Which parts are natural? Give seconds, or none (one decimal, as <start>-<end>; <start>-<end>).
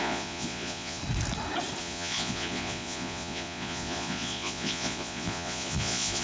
1.0-1.8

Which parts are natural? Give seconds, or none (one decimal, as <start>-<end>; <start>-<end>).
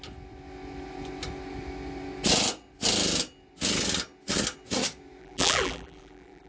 0.0-5.2